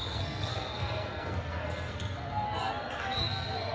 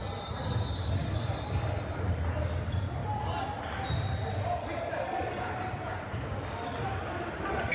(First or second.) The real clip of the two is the second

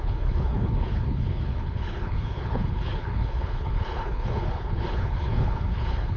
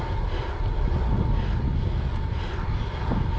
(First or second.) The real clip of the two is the second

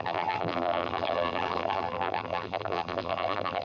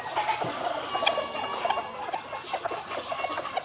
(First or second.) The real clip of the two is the second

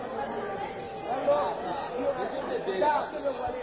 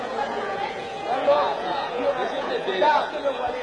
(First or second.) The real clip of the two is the first